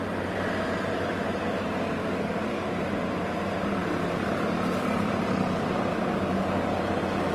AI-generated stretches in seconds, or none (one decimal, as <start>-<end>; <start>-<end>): 2.0-2.6; 5.9-6.8